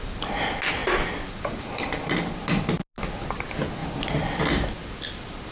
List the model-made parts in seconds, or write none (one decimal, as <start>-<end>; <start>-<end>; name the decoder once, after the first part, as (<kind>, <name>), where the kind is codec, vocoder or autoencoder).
none